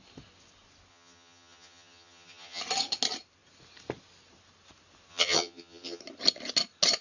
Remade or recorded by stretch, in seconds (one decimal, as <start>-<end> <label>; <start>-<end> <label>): 0.0-0.9 recorded; 0.9-2.6 remade; 2.6-5.1 recorded; 5.1-6.0 remade; 6.0-7.0 recorded